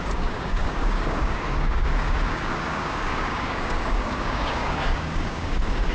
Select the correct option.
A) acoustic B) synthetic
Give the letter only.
B